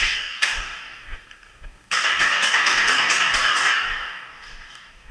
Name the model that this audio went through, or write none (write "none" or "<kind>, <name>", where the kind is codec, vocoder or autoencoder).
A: codec, DAC